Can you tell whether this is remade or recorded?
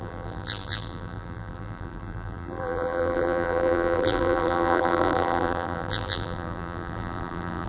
remade